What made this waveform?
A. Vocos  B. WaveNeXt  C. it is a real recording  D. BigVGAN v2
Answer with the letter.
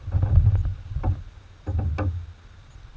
C